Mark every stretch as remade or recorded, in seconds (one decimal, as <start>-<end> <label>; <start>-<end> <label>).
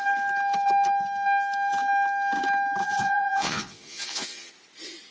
0.0-2.8 recorded; 2.8-4.5 remade; 4.5-5.1 recorded